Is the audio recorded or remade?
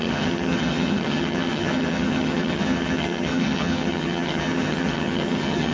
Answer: remade